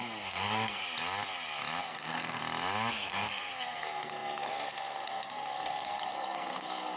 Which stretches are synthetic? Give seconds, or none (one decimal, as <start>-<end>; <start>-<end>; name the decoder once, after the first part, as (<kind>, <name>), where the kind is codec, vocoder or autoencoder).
0.0-0.8 (codec, SNAC); 1.8-2.4; 2.9-7.0